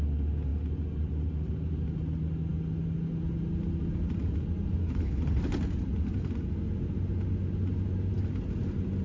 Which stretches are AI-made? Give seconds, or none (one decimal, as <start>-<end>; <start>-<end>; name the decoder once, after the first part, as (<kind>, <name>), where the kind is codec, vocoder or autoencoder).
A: 4.8-5.4 (codec, HILCodec)